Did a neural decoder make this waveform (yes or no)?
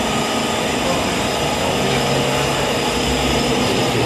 no